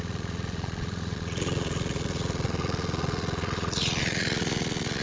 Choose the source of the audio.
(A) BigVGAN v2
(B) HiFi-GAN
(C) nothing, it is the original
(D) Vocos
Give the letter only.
D